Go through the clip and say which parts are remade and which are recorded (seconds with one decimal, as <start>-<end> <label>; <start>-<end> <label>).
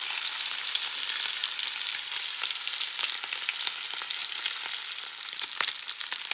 0.0-6.3 recorded